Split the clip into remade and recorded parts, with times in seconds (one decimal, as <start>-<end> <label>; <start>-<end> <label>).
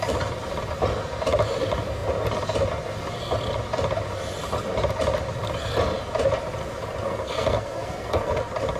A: 0.0-7.0 recorded; 7.0-8.4 remade; 8.4-8.8 recorded